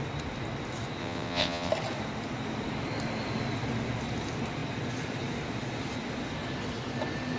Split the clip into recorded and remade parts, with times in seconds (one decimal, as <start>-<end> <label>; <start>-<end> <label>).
0.0-1.0 recorded; 1.0-1.7 remade; 1.7-7.4 recorded